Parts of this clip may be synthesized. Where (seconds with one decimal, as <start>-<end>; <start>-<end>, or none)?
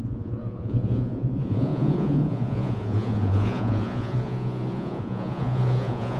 0.0-6.2